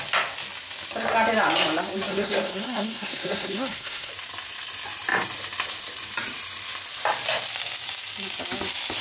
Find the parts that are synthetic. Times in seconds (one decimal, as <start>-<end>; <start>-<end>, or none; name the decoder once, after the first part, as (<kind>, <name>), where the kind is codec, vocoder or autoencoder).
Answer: 2.1-4.1 (codec, SNAC)

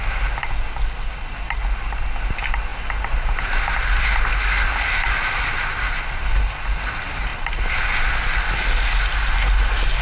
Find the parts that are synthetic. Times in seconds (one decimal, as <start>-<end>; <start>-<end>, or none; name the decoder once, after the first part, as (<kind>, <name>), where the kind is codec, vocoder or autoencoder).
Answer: none

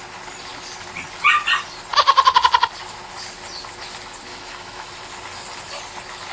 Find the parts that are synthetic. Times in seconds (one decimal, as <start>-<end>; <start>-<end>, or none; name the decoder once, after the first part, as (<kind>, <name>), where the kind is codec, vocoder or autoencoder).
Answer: 4.3-4.9 (autoencoder, DAC-VAE)

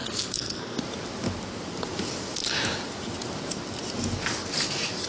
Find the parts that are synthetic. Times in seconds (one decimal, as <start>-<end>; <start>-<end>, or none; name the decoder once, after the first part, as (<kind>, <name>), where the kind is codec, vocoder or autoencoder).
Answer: 0.0-0.8 (codec, SNAC)